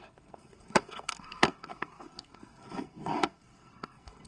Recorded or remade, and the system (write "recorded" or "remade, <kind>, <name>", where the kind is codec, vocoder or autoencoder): remade, codec, SNAC